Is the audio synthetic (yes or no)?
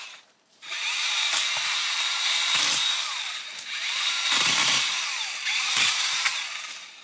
yes